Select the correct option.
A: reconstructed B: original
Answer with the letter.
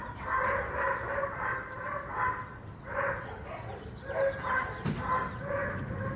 B